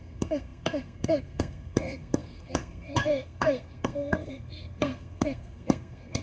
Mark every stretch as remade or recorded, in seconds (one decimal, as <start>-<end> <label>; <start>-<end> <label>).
0.0-6.2 remade